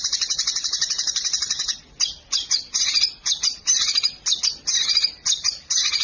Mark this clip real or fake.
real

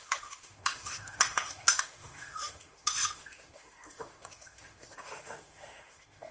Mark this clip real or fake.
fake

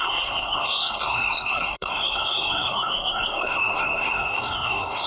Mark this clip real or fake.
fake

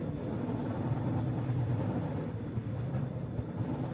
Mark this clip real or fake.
real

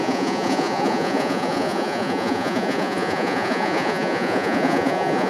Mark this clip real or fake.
fake